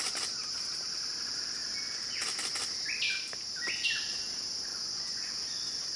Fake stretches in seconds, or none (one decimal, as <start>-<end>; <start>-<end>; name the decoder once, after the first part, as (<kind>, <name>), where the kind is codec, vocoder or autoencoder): 4.7-5.3 (vocoder, Vocos)